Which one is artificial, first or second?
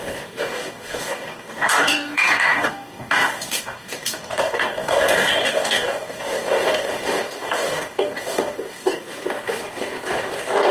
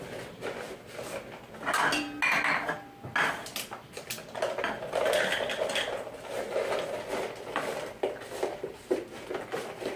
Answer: first